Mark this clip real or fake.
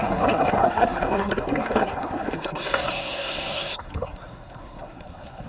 fake